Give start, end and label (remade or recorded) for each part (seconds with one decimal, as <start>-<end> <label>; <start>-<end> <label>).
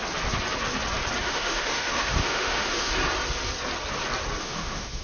0.0-1.2 recorded; 1.2-2.9 remade; 2.9-4.4 recorded; 4.4-5.0 remade